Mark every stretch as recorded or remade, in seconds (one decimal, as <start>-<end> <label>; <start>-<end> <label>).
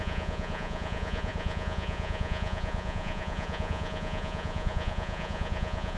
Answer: 0.0-6.0 remade